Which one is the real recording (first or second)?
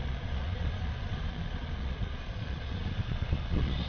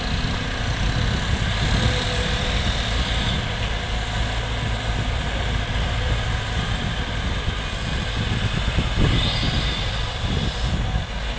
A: second